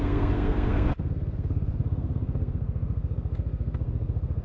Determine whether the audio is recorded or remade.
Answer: remade